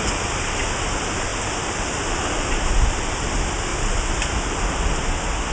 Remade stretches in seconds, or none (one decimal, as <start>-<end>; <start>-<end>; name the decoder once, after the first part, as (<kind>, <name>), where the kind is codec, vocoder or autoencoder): 1.3-3.3 (vocoder, BigVGAN v2); 3.7-4.6